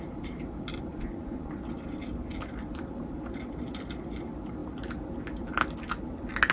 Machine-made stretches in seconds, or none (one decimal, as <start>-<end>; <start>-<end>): 0.9-1.5